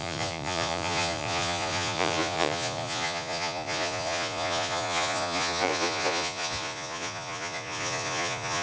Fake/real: fake